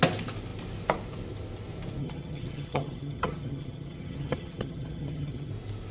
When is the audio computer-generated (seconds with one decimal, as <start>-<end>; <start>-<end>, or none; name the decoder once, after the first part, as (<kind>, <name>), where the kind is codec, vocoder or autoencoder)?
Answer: 2.0-5.5 (vocoder, HiFi-GAN)